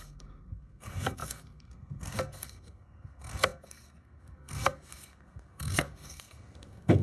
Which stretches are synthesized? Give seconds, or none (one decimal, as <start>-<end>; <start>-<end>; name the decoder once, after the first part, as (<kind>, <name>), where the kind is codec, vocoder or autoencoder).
0.0-7.0 (codec, SNAC)

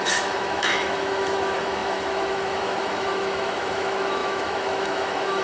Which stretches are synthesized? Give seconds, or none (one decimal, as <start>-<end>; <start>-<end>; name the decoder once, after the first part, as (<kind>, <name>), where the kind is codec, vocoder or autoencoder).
0.0-5.4 (autoencoder, DAC-VAE)

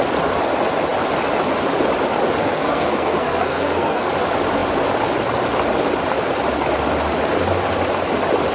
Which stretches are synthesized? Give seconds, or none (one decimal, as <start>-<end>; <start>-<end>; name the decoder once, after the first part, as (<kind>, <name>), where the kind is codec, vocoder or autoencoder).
2.4-4.1 (codec, SNAC)

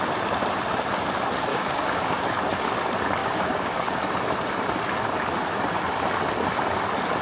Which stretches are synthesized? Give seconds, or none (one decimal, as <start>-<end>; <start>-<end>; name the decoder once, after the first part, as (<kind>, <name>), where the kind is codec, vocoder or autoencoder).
1.5-2.2 (codec, DAC); 3.2-4.0

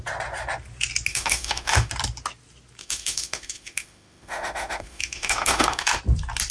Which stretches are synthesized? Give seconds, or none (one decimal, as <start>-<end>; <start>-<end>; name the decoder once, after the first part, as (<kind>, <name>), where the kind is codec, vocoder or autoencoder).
1.1-1.9 (autoencoder, DAC-VAE); 2.8-6.0

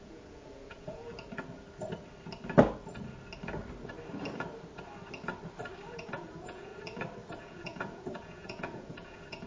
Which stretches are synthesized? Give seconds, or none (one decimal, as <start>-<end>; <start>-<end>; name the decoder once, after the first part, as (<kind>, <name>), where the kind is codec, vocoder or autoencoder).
0.0-1.1 (vocoder, Vocos); 5.9-6.7; 7.3-9.5